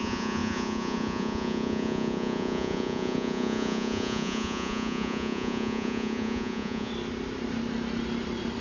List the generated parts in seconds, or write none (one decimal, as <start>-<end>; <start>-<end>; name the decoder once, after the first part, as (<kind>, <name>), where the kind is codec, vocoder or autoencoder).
0.0-6.9 (vocoder, Vocos)